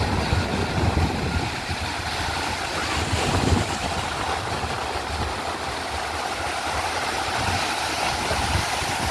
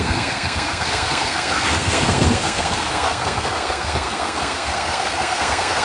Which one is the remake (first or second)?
second